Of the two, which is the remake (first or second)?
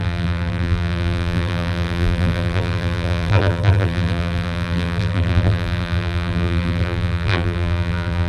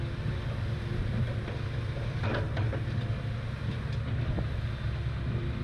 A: first